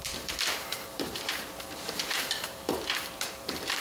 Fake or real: fake